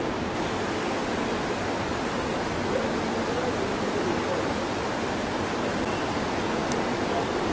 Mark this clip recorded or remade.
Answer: recorded